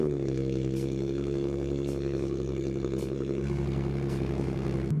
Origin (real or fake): fake